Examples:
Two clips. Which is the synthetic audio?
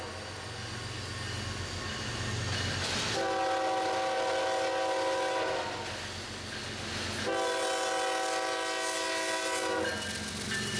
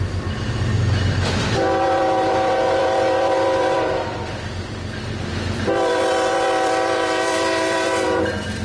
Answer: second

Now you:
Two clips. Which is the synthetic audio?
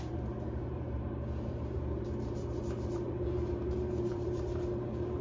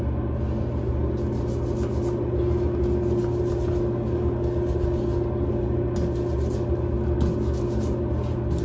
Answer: first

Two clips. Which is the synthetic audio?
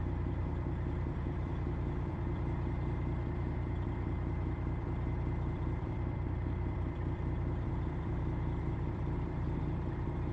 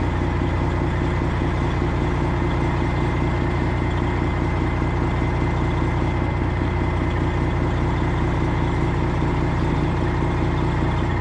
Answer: first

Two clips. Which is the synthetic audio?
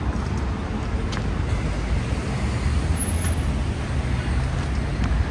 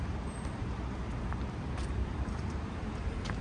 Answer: second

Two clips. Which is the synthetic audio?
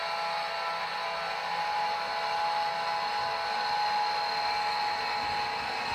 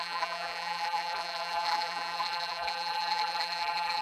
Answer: second